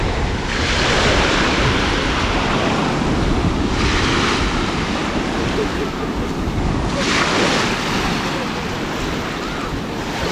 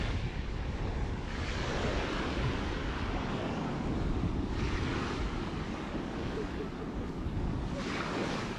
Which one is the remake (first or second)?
second